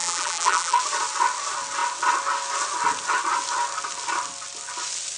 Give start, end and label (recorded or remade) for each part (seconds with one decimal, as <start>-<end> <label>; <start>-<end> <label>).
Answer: 0.0-0.8 remade; 0.8-5.2 recorded